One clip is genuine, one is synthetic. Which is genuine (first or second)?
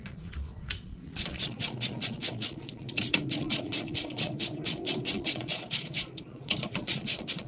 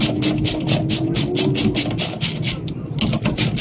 second